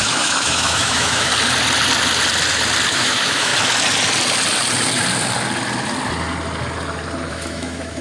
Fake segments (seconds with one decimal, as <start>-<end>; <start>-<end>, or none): 0.0-1.3; 2.9-3.5; 7.3-8.0